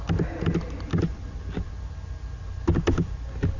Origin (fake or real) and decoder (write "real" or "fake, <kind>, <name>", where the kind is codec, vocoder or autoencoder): real